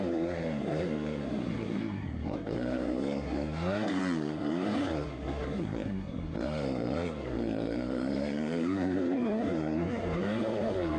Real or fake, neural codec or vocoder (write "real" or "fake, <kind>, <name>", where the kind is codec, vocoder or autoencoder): fake, codec, SNAC